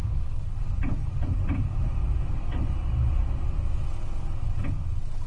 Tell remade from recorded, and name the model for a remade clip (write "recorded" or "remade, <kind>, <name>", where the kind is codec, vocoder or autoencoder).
recorded